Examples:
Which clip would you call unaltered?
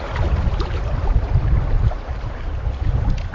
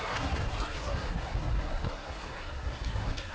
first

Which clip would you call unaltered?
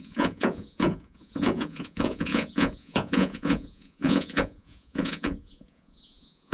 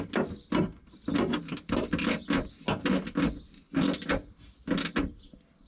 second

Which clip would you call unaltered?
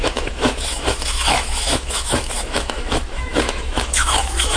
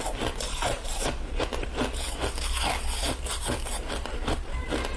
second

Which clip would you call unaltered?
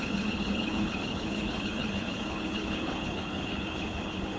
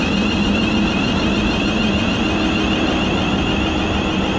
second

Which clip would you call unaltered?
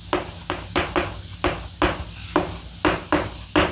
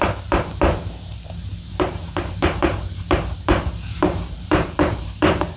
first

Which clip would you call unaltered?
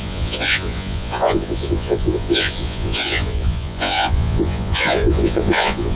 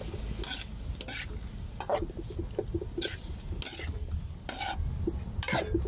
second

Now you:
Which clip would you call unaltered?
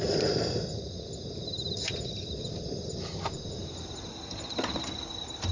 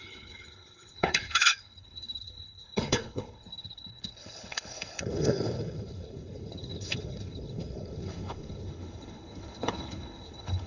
first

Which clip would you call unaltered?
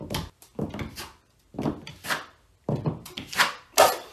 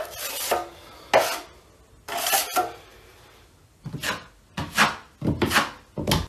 second